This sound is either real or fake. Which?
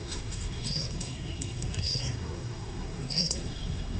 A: fake